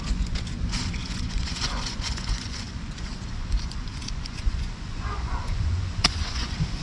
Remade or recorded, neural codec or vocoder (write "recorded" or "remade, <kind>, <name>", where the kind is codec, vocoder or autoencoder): remade, vocoder, Vocos